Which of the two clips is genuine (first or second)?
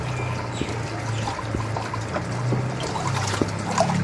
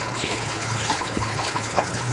first